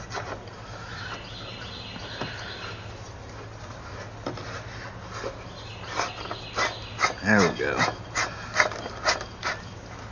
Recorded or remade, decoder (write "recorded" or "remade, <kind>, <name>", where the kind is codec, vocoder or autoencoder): recorded